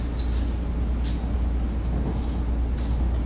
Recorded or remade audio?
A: recorded